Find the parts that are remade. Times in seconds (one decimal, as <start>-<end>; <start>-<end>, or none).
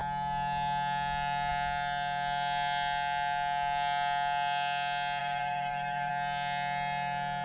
5.2-6.1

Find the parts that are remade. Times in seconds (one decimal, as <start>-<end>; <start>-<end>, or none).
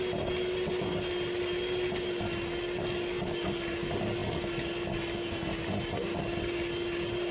none